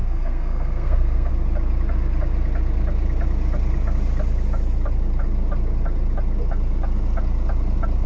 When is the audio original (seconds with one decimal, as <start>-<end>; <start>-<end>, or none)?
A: 1.3-8.1